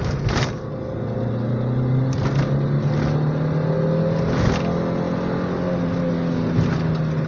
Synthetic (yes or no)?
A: no